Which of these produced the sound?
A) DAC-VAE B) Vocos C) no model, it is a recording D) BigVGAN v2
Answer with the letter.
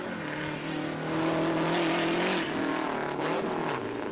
C